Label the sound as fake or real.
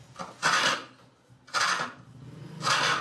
real